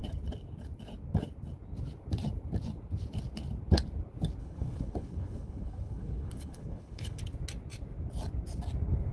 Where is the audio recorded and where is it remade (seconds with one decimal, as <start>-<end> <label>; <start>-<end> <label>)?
0.0-4.4 recorded; 4.4-7.2 remade; 7.2-9.1 recorded